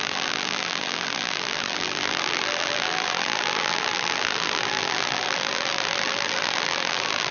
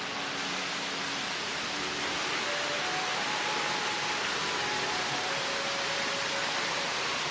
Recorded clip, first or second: second